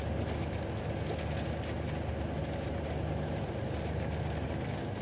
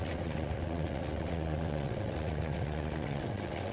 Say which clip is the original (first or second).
first